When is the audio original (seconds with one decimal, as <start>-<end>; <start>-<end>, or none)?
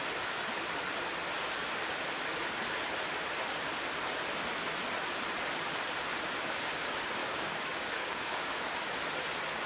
0.0-7.2; 8.9-9.7